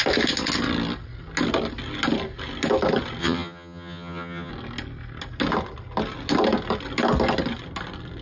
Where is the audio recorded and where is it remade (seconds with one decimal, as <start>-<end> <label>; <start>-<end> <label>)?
0.0-3.2 recorded; 3.2-4.5 remade; 4.5-8.2 recorded